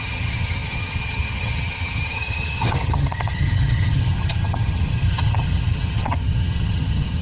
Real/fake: fake